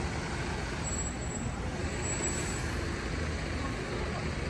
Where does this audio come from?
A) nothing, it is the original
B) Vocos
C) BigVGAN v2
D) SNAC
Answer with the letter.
A